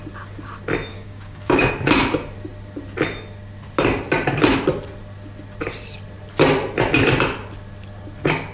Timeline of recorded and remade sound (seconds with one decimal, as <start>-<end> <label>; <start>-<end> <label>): 0.0-0.9 recorded; 0.9-1.7 remade; 1.7-8.5 recorded